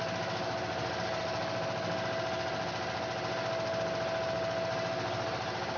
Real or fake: real